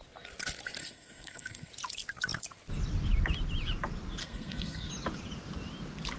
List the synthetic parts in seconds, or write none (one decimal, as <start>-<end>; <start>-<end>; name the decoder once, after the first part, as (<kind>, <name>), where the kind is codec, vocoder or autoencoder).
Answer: 0.8-1.7 (codec, SNAC); 4.2-4.9